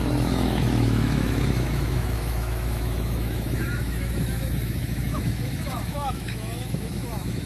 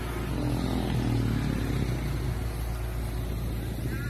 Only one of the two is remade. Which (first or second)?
first